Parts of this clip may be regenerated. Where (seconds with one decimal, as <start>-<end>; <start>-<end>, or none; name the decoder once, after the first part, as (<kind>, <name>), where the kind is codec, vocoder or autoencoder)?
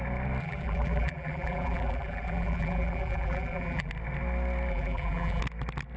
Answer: 0.4-3.9 (vocoder, BigVGAN v2); 4.7-5.4